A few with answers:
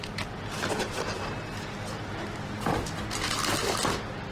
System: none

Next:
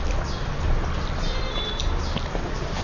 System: none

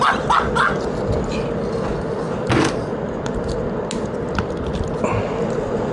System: none